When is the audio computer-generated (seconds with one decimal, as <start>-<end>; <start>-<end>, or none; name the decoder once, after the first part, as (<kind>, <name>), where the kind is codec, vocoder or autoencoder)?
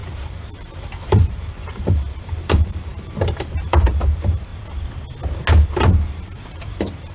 0.0-4.5 (vocoder, BigVGAN v2); 5.9-7.1